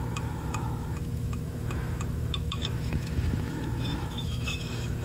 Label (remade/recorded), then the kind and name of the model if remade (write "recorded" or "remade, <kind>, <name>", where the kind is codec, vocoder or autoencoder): remade, autoencoder, DAC-VAE